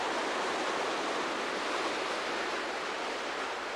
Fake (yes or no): no